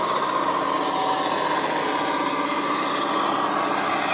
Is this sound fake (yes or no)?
no